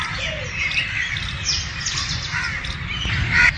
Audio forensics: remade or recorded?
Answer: recorded